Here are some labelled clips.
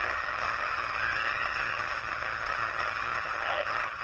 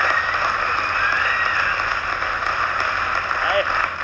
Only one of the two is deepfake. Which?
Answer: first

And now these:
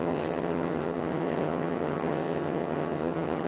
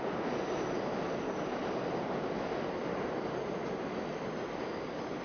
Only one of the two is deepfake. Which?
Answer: first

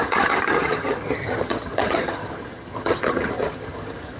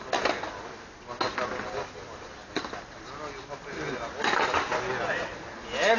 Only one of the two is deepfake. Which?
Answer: first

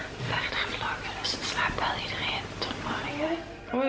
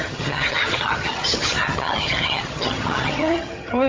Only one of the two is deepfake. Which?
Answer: second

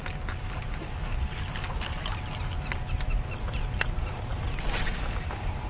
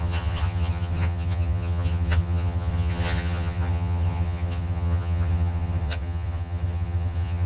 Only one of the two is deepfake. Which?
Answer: second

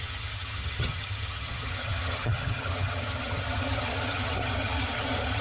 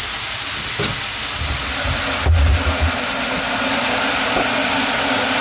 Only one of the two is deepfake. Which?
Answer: first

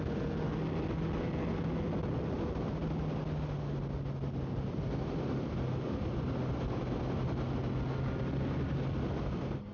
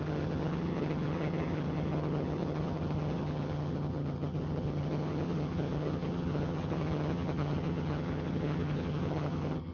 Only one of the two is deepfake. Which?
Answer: second